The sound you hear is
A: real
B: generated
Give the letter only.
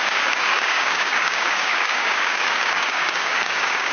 B